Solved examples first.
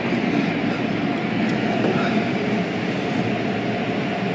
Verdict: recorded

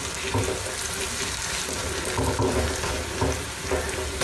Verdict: recorded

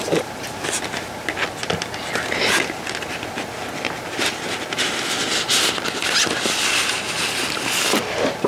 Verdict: recorded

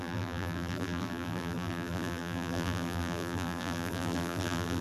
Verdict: remade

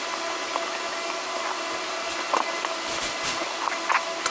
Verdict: recorded